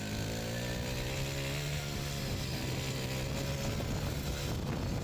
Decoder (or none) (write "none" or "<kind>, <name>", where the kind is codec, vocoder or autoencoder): none